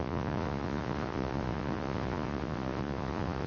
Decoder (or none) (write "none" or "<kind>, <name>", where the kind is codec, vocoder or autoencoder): vocoder, Vocos